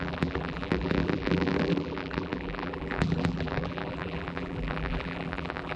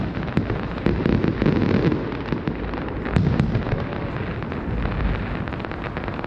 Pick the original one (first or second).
second